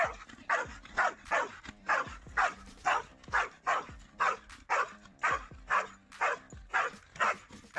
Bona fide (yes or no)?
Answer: yes